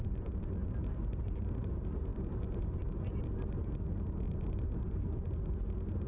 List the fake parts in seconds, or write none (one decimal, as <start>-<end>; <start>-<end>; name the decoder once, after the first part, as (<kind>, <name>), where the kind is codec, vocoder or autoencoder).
none